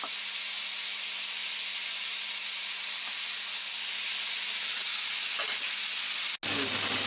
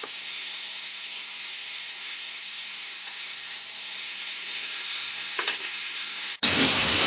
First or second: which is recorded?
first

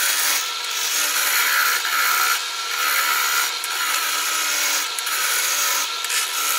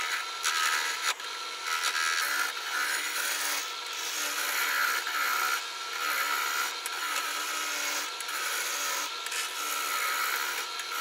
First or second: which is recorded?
second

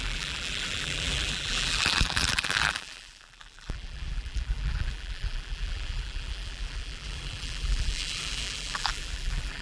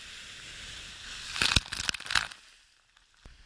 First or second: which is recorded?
second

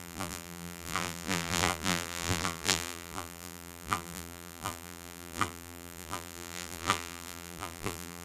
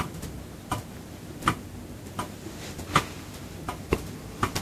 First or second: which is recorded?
second